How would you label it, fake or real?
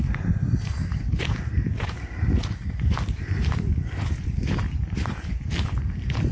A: fake